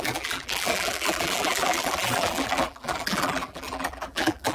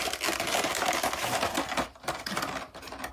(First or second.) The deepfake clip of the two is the first